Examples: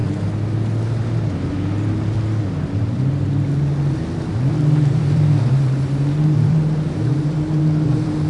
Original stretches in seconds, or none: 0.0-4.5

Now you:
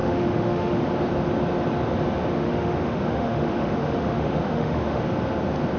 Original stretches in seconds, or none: 0.8-2.3; 5.0-5.8

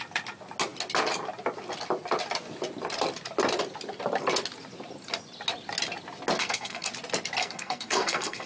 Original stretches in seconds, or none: 0.0-6.4; 6.9-7.4

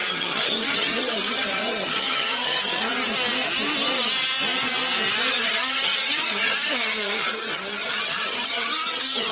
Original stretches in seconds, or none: 2.9-5.3

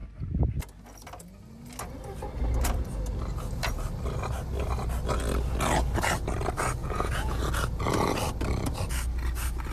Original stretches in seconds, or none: 0.0-6.8; 7.4-9.7

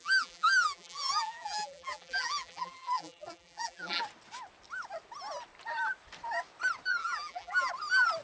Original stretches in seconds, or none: 4.0-7.0; 7.7-8.2

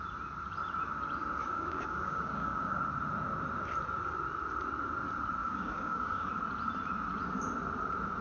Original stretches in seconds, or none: 0.0-1.4; 2.8-5.4; 6.3-8.2

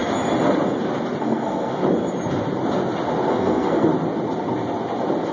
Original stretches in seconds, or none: 0.0-1.2; 1.8-3.3; 3.9-5.3